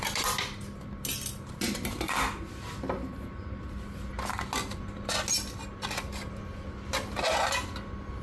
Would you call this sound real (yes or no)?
yes